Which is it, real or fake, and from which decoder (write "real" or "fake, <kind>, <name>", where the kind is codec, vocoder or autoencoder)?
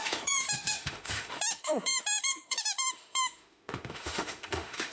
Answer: fake, autoencoder, DAC-VAE